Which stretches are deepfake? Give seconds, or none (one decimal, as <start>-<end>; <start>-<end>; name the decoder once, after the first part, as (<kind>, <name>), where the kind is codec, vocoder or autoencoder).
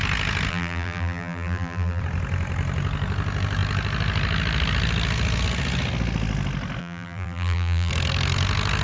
0.5-2.0 (vocoder, BigVGAN v2); 6.8-7.9